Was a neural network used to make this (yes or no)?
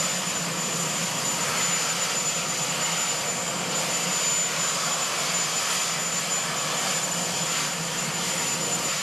no